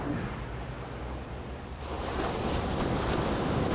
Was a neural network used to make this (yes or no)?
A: yes